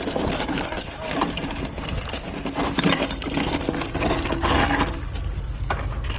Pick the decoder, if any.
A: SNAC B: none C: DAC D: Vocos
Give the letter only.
B